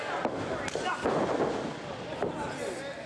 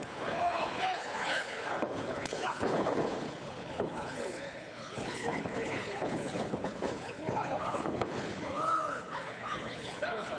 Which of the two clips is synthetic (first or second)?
second